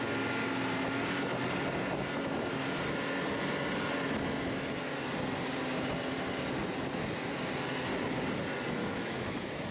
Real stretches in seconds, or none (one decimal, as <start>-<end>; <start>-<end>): 0.0-8.8